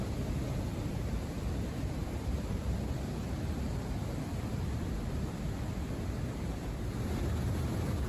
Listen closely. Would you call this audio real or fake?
fake